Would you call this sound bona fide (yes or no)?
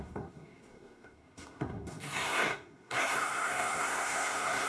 no